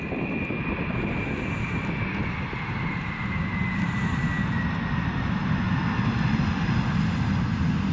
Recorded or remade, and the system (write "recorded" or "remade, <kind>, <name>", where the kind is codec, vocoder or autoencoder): recorded